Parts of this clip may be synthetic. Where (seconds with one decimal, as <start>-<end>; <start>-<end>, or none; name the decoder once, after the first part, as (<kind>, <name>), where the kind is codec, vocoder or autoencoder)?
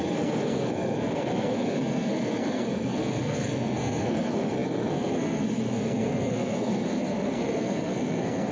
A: 0.0-8.5 (codec, SNAC)